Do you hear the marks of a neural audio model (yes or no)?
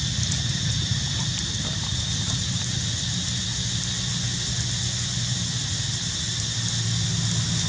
no